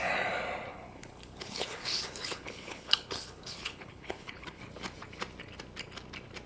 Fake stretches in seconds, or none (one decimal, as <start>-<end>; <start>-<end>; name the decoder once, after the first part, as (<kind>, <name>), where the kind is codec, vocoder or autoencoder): 0.7-4.6 (codec, HILCodec)